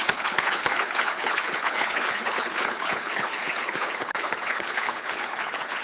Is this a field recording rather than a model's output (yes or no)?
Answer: no